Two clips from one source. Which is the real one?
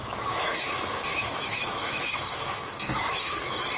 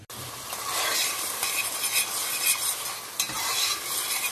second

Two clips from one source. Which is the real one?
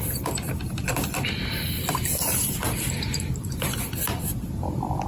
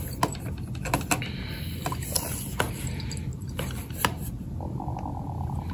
second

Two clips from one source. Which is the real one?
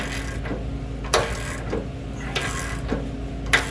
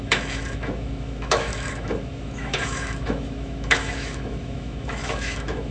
first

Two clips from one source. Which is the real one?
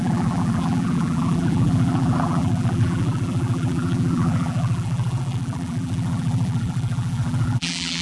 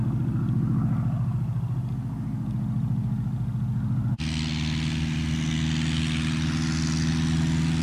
second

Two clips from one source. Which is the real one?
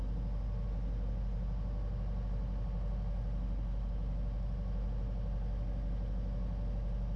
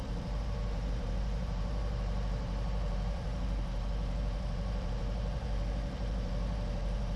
first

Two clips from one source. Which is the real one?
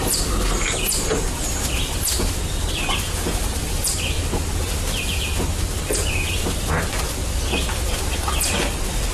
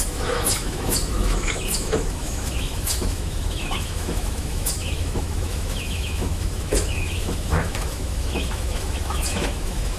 first